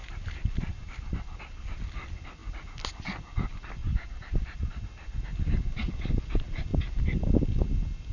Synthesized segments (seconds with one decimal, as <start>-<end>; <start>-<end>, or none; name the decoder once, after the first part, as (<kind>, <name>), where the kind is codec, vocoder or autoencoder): 0.0-1.4 (vocoder, BigVGAN v2); 3.8-4.7; 6.7-7.2